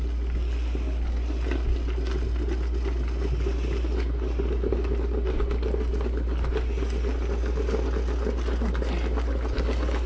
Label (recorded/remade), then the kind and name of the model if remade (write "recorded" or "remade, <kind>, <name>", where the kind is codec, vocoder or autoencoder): recorded